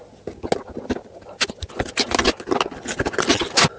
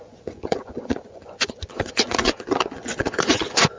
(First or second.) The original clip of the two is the first